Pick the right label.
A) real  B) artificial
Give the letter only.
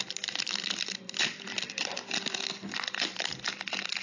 A